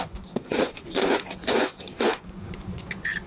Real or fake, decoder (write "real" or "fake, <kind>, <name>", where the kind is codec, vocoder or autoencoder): fake, vocoder, Vocos